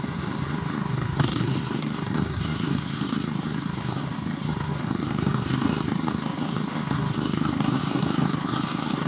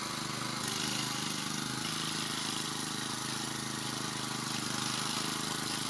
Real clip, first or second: second